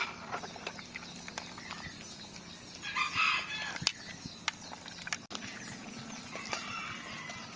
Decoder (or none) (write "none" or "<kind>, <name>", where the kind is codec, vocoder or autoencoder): none